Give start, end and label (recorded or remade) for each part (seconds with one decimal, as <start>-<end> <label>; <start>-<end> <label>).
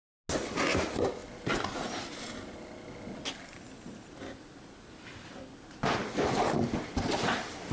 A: 0.0-7.7 recorded